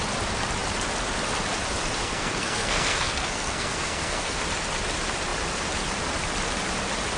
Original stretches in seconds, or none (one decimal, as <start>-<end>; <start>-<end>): 0.0-2.0; 4.4-7.2